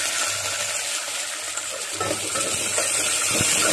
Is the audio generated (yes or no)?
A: no